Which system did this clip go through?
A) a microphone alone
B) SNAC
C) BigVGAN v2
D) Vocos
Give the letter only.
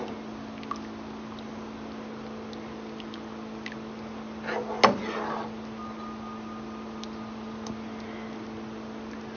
A